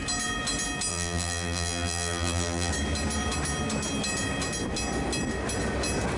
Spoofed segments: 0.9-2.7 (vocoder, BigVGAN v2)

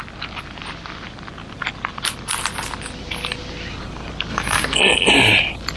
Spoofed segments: 4.3-4.8 (codec, SNAC)

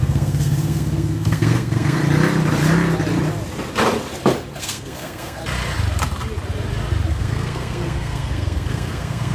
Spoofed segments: 0.0-2.0 (codec, SNAC); 4.6-5.4; 7.1-9.3

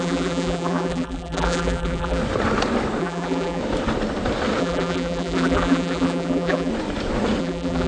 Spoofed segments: 0.0-2.2 (vocoder, BigVGAN v2); 3.0-3.6; 4.6-6.7; 7.4-7.9

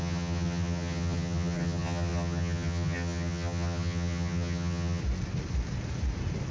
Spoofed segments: 0.0-5.0 (vocoder, HiFi-GAN)